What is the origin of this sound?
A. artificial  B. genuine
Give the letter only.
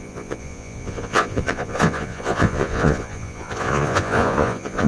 A